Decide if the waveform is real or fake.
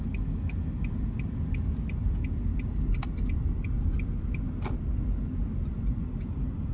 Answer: real